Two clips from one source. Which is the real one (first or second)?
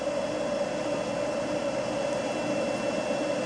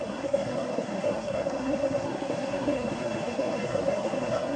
first